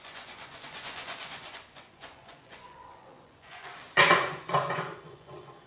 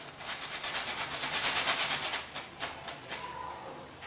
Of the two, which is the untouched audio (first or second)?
second